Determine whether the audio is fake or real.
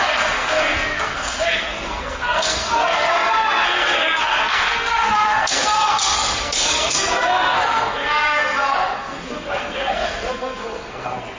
fake